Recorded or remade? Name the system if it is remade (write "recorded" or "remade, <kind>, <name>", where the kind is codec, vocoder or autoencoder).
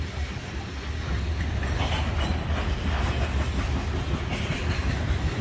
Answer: recorded